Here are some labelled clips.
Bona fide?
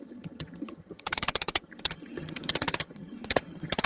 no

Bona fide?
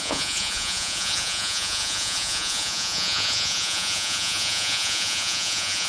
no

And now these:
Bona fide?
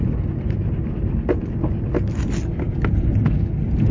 yes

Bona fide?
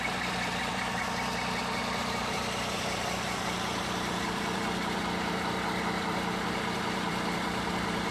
no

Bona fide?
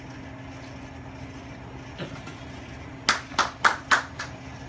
yes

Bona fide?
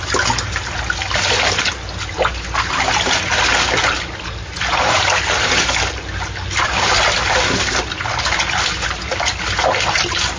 yes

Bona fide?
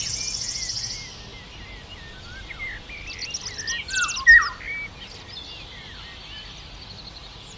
yes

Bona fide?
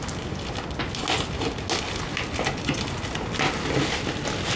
yes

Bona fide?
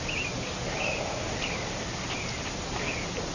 yes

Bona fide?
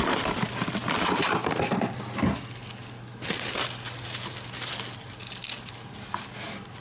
yes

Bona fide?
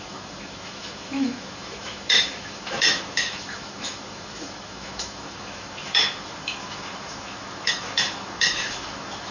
no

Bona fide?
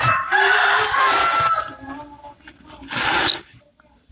yes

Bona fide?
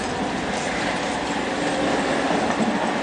yes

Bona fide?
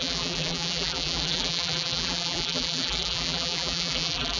no